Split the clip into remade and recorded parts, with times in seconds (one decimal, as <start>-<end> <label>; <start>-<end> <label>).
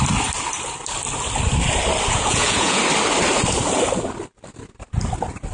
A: 0.0-2.1 recorded; 2.1-2.8 remade; 2.8-5.5 recorded